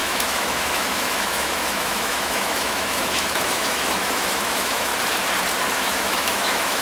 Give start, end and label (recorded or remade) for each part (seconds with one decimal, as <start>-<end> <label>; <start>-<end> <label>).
0.0-4.9 remade; 4.9-5.7 recorded; 5.7-6.8 remade